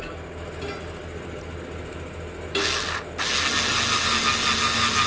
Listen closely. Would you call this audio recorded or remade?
recorded